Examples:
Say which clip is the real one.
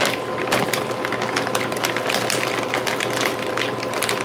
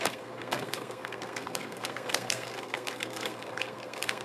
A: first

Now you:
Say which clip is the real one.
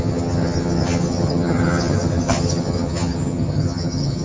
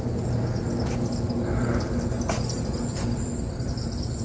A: second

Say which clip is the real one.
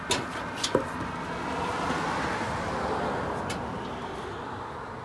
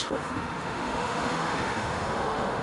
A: first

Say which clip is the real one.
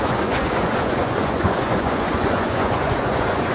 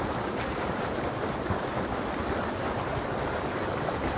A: second